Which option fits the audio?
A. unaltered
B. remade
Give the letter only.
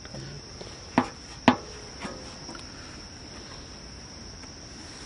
A